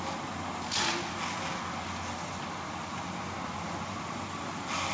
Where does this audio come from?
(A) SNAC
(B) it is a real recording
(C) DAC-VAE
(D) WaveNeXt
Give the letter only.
B